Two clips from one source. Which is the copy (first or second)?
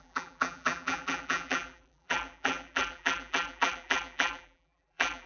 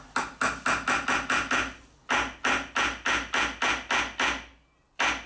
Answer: first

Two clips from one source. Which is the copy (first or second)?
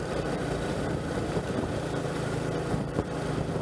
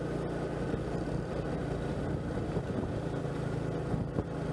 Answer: first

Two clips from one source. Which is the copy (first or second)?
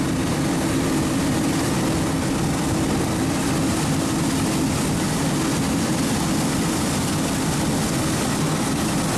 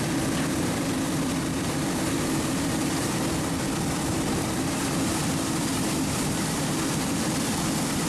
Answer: second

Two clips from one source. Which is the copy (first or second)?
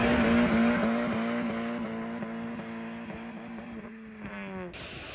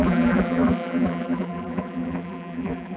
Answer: second